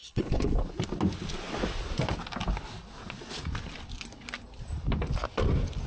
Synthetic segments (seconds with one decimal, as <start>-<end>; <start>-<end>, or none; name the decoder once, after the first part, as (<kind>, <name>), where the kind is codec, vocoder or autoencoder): 0.0-0.6 (codec, HILCodec)